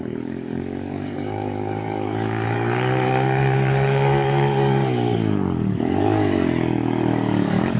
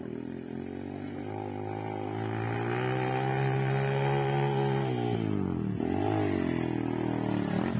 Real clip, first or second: second